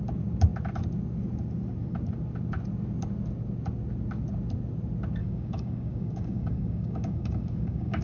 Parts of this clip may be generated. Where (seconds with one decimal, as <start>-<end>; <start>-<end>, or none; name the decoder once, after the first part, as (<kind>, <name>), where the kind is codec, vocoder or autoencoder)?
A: 5.2-8.0 (codec, DAC)